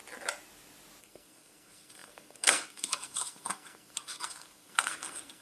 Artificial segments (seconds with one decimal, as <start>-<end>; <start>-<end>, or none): 1.0-5.4